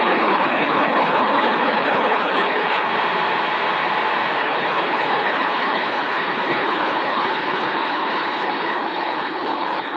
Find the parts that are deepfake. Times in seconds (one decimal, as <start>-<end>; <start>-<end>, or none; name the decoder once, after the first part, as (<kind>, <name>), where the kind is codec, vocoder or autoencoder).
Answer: 0.0-2.9 (codec, HILCodec); 4.4-10.0